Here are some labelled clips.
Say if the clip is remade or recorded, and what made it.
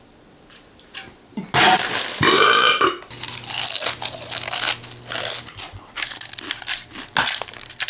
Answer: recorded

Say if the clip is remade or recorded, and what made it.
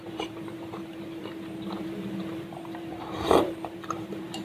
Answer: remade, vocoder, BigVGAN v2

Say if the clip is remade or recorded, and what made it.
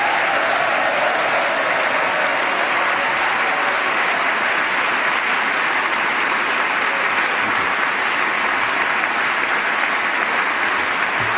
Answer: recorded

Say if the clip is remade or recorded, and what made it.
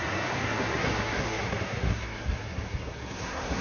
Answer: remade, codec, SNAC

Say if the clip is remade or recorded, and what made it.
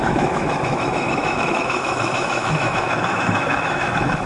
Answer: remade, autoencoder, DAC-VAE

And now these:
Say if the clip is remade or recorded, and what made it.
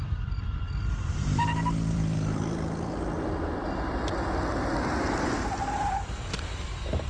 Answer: remade, vocoder, BigVGAN v2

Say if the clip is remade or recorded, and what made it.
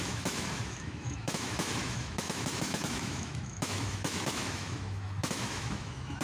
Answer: remade, autoencoder, DAC-VAE